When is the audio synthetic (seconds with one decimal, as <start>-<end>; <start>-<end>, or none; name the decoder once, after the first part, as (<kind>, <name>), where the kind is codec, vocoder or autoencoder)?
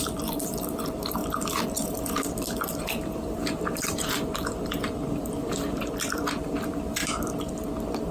0.0-7.0 (vocoder, BigVGAN v2)